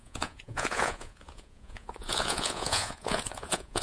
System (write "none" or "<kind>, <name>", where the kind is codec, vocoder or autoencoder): vocoder, Vocos